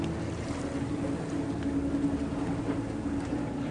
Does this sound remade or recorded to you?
recorded